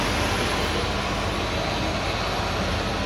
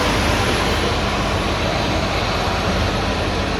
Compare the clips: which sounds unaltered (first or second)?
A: first